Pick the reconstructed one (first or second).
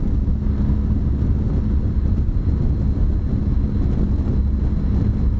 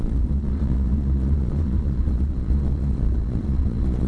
second